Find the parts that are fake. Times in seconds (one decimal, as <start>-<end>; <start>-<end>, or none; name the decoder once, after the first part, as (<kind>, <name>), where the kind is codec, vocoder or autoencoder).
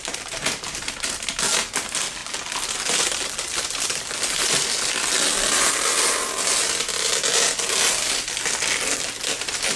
none